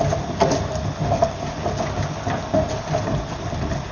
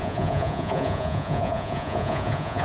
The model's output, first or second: second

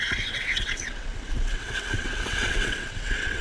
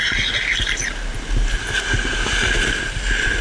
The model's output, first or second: first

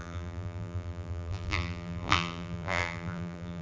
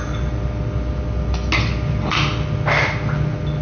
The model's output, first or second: first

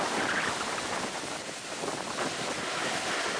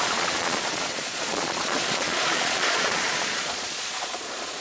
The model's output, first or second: second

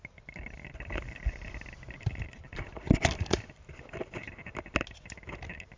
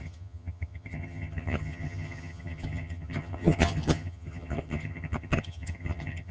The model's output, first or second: second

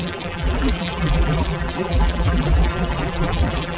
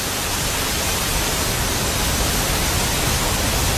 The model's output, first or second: first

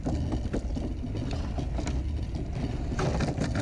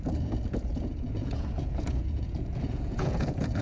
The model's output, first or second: second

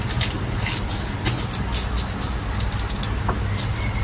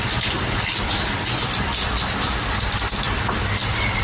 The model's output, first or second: second